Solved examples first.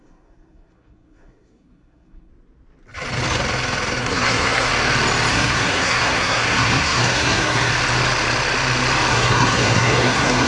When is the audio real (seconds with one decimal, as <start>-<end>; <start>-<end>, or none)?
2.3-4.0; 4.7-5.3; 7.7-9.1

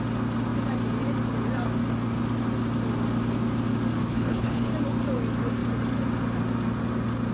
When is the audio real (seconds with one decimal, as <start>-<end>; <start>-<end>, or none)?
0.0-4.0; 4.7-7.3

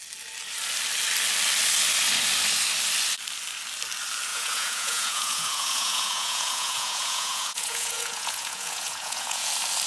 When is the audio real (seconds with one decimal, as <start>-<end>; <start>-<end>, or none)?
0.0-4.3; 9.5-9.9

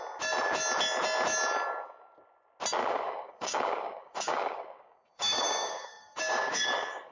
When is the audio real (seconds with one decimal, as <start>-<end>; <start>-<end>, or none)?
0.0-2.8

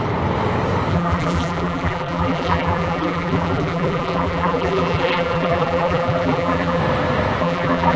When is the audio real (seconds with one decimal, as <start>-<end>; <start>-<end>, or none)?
0.0-0.9; 6.8-7.4

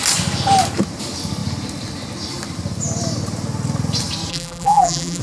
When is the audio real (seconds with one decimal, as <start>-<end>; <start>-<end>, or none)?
0.0-4.3

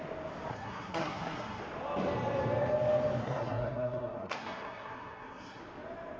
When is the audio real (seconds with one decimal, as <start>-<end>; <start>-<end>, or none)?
0.0-0.5; 1.6-3.2; 5.6-6.2